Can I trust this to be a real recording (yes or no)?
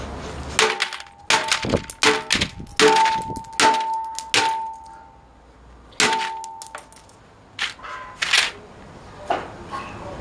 yes